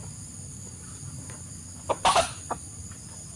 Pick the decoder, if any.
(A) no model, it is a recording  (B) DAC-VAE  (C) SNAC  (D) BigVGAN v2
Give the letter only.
A